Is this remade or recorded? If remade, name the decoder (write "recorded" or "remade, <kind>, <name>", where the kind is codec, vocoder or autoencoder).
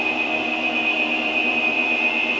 remade, vocoder, BigVGAN v2